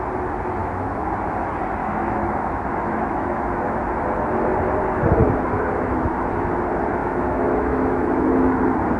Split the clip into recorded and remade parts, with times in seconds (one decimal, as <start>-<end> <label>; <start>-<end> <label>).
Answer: 0.0-0.6 recorded; 0.6-1.1 remade; 1.1-1.8 recorded; 1.8-3.8 remade; 3.8-5.2 recorded; 5.2-6.3 remade; 6.3-7.0 recorded; 7.0-8.6 remade; 8.6-9.0 recorded